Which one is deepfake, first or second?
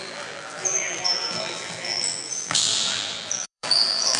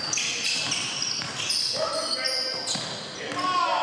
first